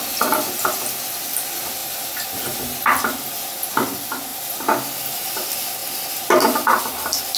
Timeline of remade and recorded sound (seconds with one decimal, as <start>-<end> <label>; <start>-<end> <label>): 0.0-7.4 recorded